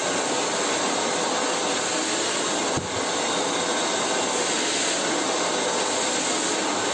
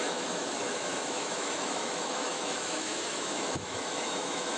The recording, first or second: first